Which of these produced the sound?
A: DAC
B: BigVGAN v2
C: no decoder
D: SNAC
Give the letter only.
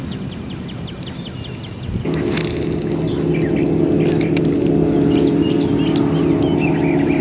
C